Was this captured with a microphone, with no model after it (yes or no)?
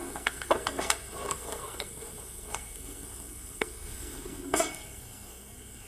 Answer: no